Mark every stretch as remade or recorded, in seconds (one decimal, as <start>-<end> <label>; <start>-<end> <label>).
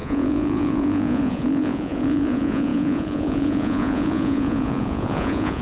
0.0-5.6 remade